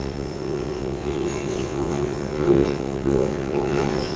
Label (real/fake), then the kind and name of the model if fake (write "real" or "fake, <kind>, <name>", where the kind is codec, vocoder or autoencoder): fake, vocoder, WaveNeXt